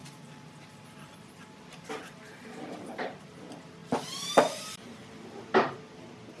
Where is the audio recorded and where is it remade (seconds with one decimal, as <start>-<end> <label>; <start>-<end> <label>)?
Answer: 0.0-0.7 remade; 0.7-2.0 recorded; 2.0-3.3 remade; 3.3-3.8 recorded; 3.8-5.4 remade; 5.4-6.4 recorded